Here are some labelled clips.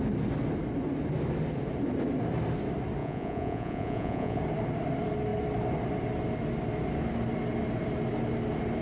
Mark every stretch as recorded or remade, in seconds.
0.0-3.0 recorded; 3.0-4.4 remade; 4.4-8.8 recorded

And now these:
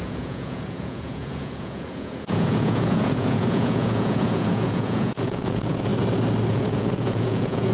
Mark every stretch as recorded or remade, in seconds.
0.0-5.9 remade; 5.9-6.5 recorded; 6.5-7.7 remade

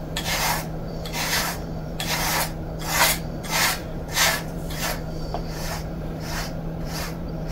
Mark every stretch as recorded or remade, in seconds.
0.0-2.3 remade; 2.3-3.2 recorded; 3.2-7.5 remade

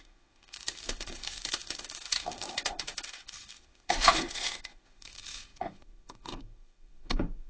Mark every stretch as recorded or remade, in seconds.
0.0-7.5 remade

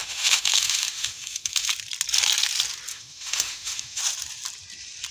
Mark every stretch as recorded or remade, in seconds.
0.0-1.7 remade; 1.7-2.9 recorded; 2.9-4.0 remade; 4.0-5.1 recorded

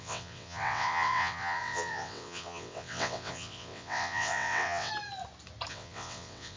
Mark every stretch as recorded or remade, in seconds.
0.0-4.9 remade; 4.9-5.7 recorded; 5.7-6.6 remade